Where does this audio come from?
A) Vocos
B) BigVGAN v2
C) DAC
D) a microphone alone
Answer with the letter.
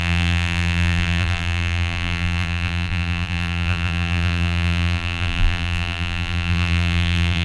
B